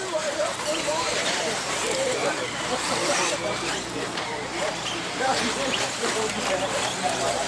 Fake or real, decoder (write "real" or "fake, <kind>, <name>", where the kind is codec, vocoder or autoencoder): fake, vocoder, BigVGAN v2